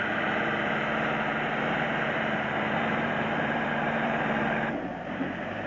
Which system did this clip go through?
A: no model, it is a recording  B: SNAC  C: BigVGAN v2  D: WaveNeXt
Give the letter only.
C